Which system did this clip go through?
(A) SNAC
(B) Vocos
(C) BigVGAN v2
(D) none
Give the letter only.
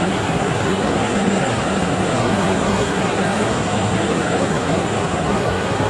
A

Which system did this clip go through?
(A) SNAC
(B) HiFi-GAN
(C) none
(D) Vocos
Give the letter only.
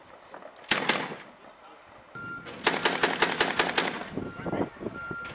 C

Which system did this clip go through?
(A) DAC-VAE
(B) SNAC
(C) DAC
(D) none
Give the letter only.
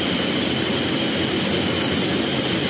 D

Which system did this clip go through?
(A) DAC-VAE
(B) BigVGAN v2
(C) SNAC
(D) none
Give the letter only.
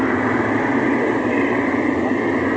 D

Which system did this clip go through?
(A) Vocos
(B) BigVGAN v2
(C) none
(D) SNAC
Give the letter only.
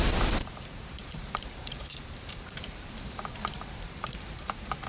B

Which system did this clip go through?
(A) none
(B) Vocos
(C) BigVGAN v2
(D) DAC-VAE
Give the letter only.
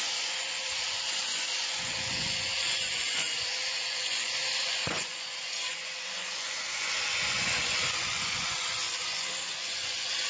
B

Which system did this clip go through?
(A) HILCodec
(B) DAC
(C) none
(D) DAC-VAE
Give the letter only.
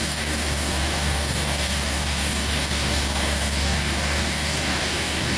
B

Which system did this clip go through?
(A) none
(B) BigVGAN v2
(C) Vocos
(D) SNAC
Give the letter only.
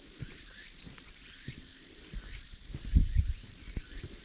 A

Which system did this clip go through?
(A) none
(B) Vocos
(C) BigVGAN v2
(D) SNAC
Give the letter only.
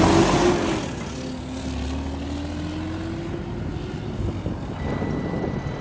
A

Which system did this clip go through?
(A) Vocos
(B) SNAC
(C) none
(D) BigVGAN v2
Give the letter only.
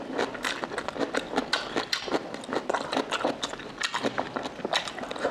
C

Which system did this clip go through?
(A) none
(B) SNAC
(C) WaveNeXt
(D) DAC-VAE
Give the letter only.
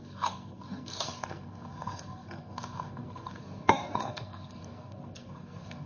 B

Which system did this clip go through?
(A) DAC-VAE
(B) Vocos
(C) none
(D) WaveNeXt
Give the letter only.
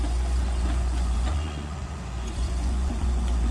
B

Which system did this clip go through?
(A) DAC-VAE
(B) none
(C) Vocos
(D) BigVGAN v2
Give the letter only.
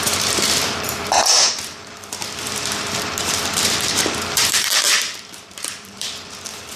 D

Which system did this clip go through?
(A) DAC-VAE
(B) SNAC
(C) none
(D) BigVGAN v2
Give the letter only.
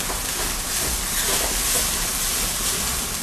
C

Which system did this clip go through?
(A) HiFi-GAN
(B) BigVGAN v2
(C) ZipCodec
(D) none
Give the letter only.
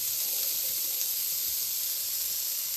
D